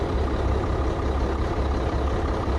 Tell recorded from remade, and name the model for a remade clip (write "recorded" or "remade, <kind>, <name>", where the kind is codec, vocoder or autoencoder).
recorded